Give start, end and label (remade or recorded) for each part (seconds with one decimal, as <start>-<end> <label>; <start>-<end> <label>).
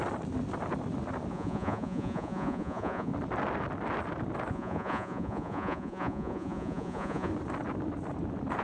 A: 0.0-1.3 recorded; 1.3-3.1 remade; 3.1-4.5 recorded; 4.5-7.3 remade; 7.3-8.6 recorded